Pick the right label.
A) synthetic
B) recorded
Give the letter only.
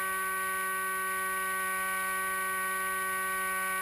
B